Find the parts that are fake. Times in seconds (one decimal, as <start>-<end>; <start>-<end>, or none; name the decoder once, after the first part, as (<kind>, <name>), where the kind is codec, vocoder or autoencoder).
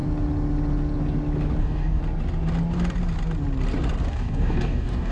1.6-2.0 (codec, DAC); 4.1-5.1